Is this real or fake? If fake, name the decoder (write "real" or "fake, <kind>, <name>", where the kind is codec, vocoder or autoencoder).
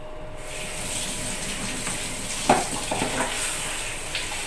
real